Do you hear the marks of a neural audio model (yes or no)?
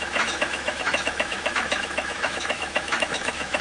yes